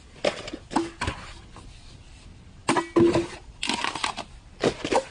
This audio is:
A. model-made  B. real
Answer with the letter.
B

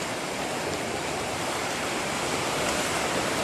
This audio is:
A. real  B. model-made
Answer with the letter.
B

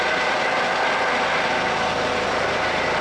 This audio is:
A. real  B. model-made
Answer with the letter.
A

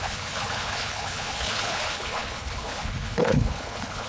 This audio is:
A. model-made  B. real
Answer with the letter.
A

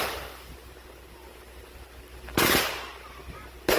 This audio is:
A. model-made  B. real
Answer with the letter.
B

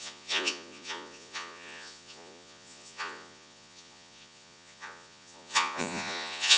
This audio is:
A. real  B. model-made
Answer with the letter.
B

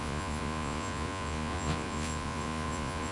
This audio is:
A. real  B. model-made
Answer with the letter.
B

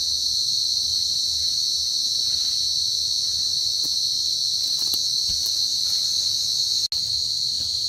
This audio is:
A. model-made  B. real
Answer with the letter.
B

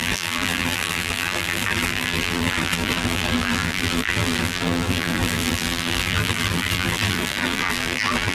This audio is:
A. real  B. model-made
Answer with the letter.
B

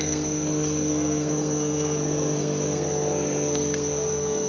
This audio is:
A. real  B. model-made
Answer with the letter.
B